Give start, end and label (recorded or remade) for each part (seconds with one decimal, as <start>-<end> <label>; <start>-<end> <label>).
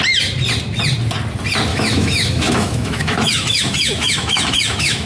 0.0-1.7 recorded; 1.7-5.1 remade